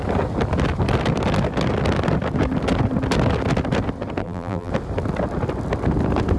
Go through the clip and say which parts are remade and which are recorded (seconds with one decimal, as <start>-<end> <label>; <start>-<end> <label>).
0.0-4.2 recorded; 4.2-4.7 remade; 4.7-6.4 recorded